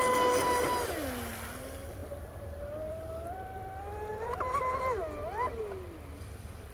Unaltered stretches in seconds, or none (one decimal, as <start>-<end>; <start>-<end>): 0.0-6.7